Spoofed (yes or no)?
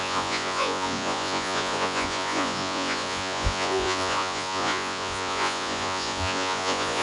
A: yes